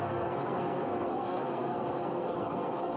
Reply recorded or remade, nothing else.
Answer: remade